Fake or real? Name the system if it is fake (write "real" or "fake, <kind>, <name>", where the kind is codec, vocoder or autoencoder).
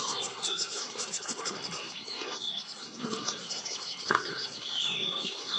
fake, codec, SNAC